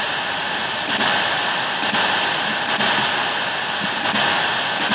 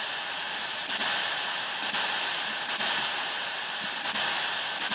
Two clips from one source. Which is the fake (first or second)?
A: second